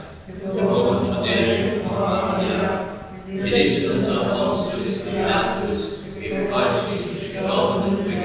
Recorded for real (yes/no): yes